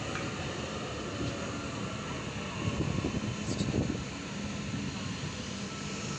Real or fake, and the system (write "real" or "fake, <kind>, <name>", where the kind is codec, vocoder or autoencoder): real